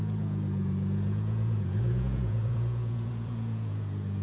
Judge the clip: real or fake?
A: fake